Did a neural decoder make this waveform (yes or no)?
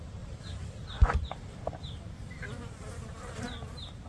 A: no